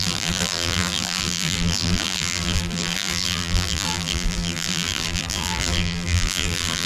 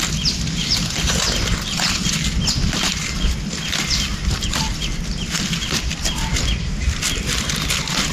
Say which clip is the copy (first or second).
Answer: first